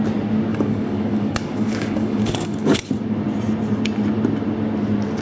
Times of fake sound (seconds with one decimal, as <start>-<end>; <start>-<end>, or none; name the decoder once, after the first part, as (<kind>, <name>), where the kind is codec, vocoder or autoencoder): 0.5-2.9 (codec, DAC)